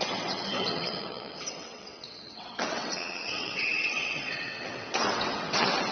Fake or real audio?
fake